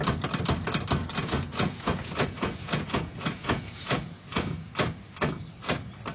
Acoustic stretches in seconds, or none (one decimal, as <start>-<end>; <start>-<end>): 0.0-1.0; 4.7-6.1